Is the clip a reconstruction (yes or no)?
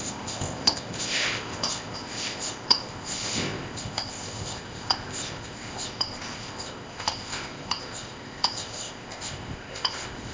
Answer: yes